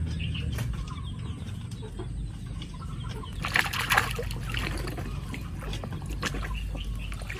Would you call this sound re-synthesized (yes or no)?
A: no